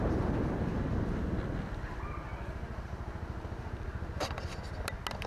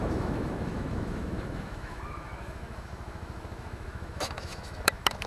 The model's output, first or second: second